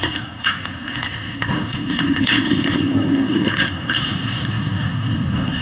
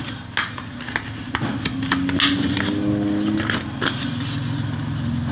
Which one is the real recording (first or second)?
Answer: second